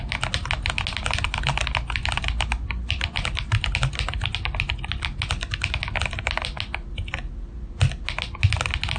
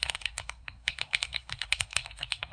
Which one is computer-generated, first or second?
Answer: second